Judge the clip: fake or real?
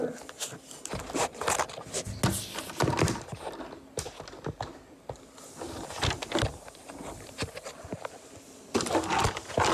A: real